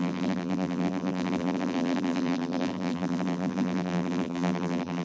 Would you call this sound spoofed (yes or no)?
yes